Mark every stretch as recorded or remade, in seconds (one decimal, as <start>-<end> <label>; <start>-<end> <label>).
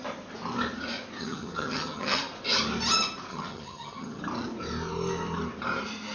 0.0-1.2 recorded; 1.2-2.2 remade; 2.2-3.3 recorded; 3.3-4.2 remade; 4.2-6.1 recorded